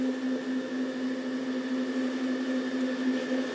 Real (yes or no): yes